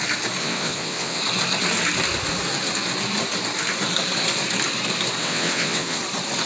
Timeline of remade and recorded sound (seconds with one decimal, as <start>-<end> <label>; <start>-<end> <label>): 0.0-0.4 recorded; 0.4-1.2 remade; 1.2-5.2 recorded; 5.2-6.0 remade; 6.0-6.5 recorded